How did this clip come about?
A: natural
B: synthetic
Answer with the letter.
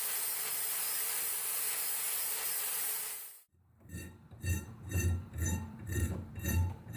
B